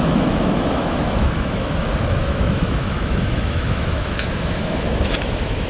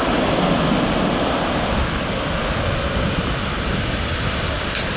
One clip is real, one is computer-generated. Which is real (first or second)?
second